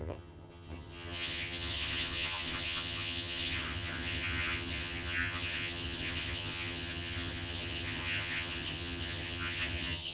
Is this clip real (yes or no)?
no